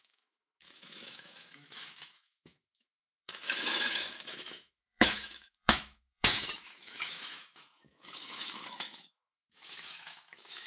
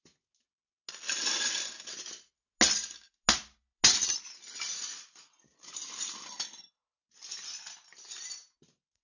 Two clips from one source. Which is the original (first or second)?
second